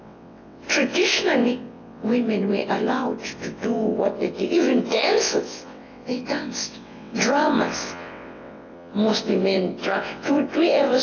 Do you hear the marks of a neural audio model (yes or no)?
yes